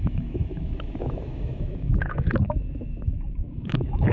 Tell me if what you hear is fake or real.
fake